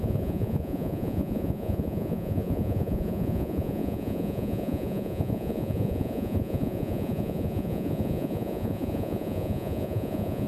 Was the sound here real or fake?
fake